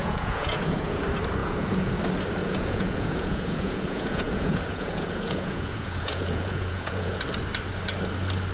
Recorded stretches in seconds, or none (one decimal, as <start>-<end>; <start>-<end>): 1.0-1.4; 2.0-2.4; 7.2-8.5